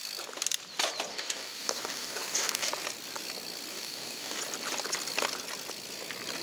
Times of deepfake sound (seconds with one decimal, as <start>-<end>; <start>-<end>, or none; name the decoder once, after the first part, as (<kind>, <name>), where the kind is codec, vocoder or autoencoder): 1.1-2.7 (codec, DAC); 3.7-4.4